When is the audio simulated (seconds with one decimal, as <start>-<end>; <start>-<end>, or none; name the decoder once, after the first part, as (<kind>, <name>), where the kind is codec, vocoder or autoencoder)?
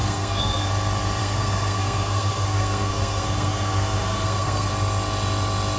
0.0-0.7 (codec, SNAC); 1.2-4.7